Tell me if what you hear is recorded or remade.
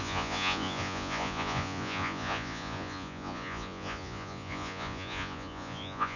remade